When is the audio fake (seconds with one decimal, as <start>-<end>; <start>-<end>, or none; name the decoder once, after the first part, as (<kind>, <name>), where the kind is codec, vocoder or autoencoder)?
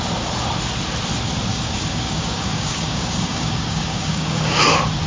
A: 1.5-4.6 (codec, DAC)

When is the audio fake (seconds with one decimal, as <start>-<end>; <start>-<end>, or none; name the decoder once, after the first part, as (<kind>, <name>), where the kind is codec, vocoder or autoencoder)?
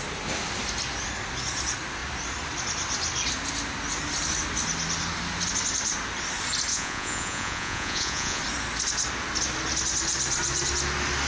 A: 6.7-8.4 (vocoder, Vocos)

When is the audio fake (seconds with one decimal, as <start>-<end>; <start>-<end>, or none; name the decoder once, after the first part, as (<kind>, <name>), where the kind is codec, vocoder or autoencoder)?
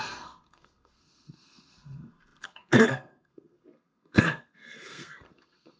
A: 0.0-5.8 (codec, SNAC)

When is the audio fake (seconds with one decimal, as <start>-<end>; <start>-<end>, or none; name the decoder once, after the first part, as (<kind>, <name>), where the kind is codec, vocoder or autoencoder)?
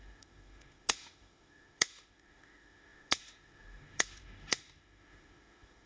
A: 0.0-5.9 (autoencoder, DAC-VAE)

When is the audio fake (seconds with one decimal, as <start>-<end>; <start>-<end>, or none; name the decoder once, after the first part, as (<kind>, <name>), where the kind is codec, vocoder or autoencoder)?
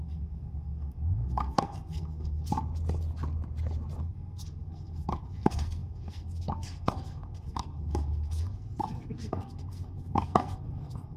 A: 0.0-2.5 (codec, SNAC); 4.0-11.2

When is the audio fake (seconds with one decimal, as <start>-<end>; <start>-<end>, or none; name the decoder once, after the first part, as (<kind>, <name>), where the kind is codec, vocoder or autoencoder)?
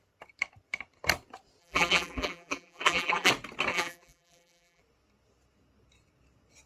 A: 1.6-3.3 (vocoder, BigVGAN v2); 3.7-4.8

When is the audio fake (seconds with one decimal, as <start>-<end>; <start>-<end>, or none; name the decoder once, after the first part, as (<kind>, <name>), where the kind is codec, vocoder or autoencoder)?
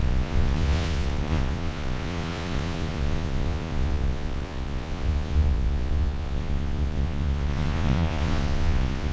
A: 0.0-9.1 (vocoder, Vocos)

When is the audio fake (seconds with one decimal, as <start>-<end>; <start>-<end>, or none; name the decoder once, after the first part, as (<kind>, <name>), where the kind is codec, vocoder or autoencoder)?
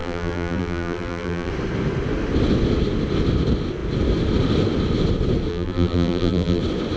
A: 0.0-1.5 (vocoder, BigVGAN v2); 5.5-6.6